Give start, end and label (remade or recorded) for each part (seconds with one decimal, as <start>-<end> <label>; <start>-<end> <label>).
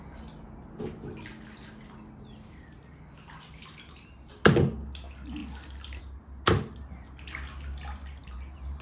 0.0-3.6 recorded; 3.6-4.1 remade; 4.1-8.2 recorded; 8.2-8.8 remade